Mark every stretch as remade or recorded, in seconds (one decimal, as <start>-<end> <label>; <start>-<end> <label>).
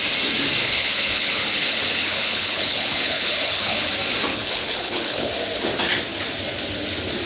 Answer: 0.0-0.6 recorded; 0.6-3.9 remade; 3.9-4.3 recorded; 4.3-5.3 remade; 5.3-7.3 recorded